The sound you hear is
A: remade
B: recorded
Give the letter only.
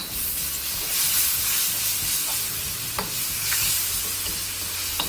B